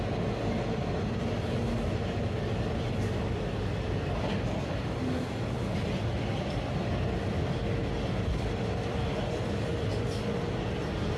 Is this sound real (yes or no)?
yes